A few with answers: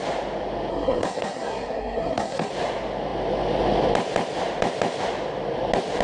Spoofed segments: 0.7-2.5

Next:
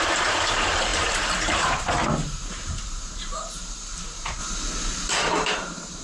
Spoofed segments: 0.0-4.4; 5.1-6.0

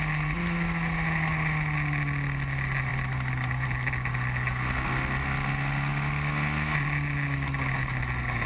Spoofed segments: none

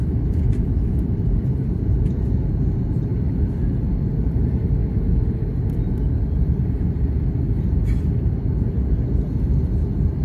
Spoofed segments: 0.0-4.8

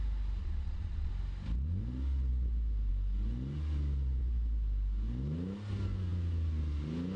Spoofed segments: 0.4-1.1

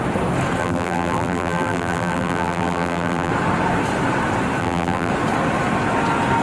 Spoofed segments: 0.6-3.3; 4.6-5.1